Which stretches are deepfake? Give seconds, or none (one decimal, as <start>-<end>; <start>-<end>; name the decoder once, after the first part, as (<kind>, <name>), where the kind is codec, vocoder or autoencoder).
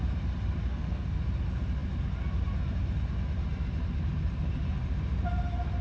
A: 0.7-1.2 (codec, SNAC)